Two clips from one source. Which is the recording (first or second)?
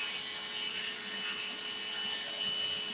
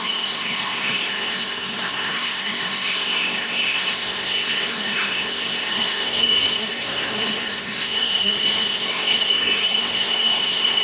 first